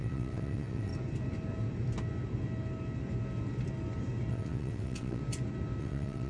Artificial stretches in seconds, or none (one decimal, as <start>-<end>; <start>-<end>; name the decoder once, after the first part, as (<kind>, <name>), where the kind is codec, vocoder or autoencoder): 0.0-0.9 (vocoder, WaveNeXt); 4.3-5.2; 5.8-6.3